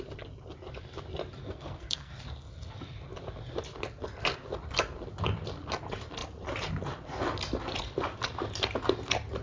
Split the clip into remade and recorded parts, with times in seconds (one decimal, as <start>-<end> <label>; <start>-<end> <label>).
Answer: 0.0-1.4 recorded; 1.4-2.1 remade; 2.1-9.4 recorded